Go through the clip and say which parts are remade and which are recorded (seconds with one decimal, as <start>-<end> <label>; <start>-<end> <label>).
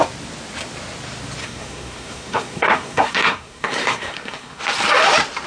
0.0-1.4 recorded; 1.4-4.6 remade; 4.6-5.5 recorded